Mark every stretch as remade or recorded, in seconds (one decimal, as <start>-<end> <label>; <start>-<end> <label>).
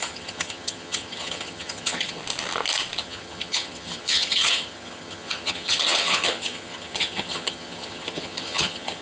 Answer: 0.0-2.2 remade; 2.2-3.0 recorded; 3.0-9.0 remade